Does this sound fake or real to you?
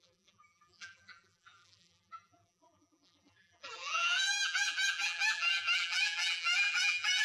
fake